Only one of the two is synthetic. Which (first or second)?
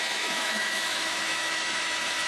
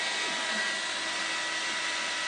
first